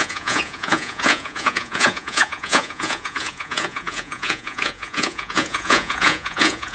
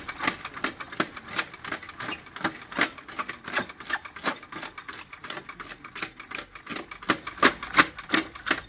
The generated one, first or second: first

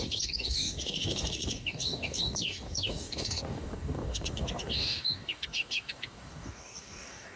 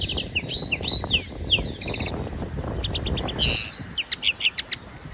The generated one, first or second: first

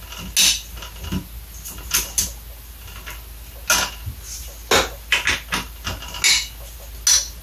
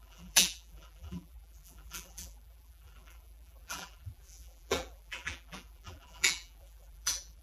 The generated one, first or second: second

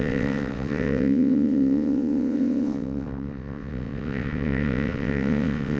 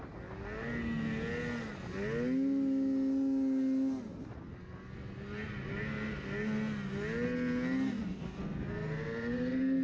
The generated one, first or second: first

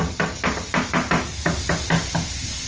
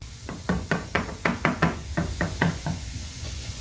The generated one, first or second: second